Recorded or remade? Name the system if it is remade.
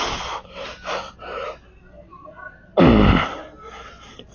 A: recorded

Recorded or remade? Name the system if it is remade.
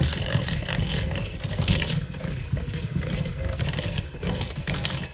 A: remade, codec, SNAC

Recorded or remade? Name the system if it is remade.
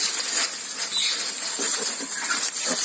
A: recorded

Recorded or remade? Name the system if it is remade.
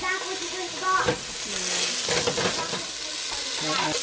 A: recorded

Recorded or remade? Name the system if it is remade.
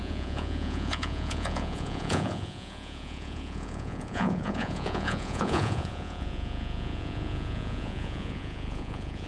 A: remade, vocoder, Vocos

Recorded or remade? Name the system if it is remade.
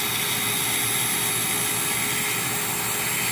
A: recorded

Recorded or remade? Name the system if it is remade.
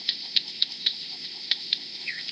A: remade, codec, ZipCodec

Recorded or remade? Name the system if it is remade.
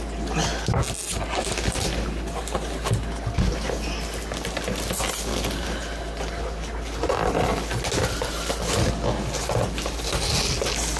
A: recorded